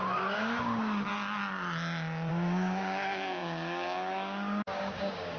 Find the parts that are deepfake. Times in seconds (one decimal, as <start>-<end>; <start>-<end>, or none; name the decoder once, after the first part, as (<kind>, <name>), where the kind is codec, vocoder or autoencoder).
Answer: 0.0-1.1 (codec, DAC); 2.3-5.4